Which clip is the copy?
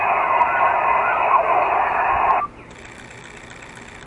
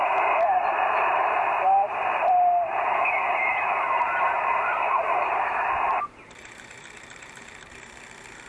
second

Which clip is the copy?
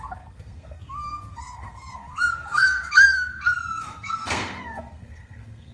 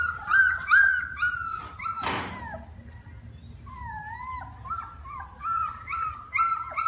first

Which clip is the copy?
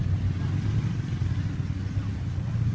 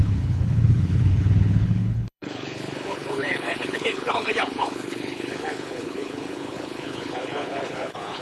second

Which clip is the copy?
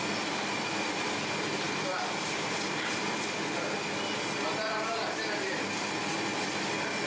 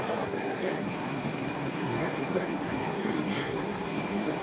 second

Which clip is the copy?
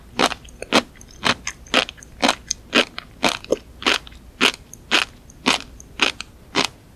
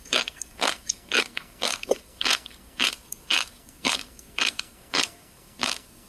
second